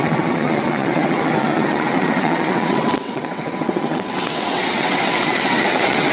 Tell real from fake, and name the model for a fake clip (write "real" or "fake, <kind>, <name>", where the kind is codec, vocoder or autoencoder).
fake, vocoder, WaveNeXt